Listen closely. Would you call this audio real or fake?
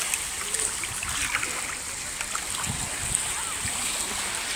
real